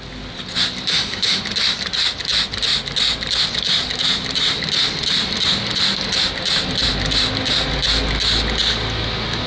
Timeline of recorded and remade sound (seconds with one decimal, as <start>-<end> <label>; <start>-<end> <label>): 0.0-0.9 recorded; 0.9-1.4 remade; 1.4-9.5 recorded